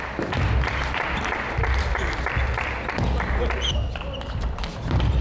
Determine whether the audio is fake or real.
real